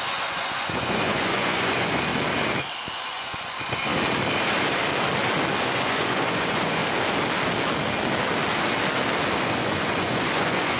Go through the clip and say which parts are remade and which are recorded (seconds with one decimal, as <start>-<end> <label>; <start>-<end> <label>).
0.0-2.1 remade; 2.1-2.9 recorded; 2.9-3.9 remade; 3.9-5.6 recorded; 5.6-6.8 remade; 6.8-9.4 recorded; 9.4-10.8 remade